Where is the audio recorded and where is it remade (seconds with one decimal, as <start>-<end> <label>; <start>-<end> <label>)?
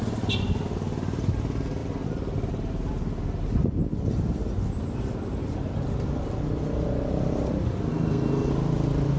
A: 0.0-7.9 recorded; 7.9-8.5 remade; 8.5-9.2 recorded